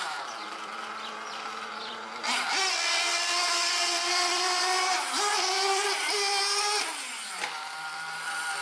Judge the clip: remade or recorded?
recorded